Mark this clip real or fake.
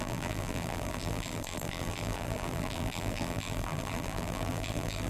fake